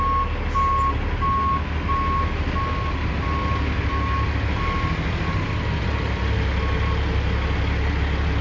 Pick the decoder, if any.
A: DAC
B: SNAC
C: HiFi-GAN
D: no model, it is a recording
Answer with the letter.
D